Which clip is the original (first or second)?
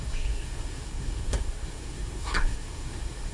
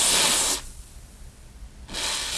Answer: second